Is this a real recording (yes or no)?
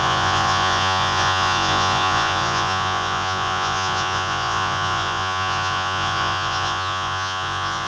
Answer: no